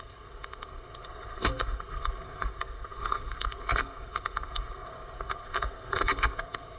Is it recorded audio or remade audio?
remade